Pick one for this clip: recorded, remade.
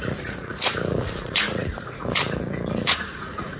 remade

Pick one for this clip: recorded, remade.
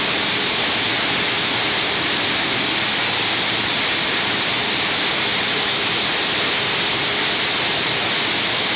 recorded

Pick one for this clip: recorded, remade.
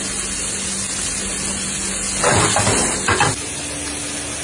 recorded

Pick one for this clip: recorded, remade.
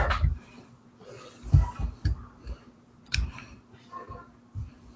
recorded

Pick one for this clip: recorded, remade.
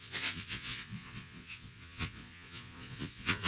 remade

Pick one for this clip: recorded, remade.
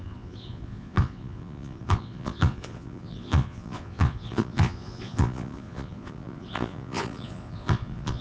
remade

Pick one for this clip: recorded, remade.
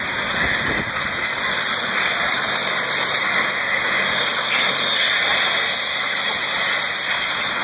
recorded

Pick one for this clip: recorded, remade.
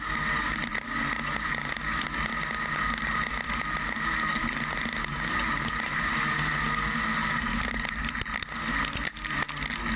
recorded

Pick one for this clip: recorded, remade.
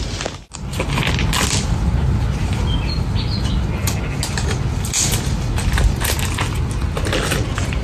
recorded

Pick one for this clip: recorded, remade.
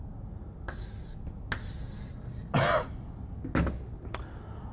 recorded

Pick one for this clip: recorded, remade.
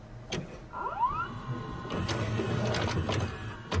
recorded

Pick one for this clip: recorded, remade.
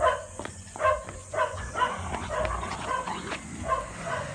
remade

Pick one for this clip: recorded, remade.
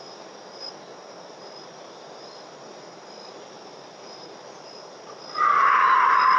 recorded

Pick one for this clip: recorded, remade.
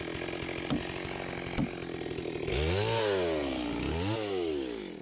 recorded